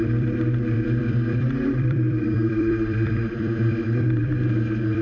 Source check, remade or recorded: remade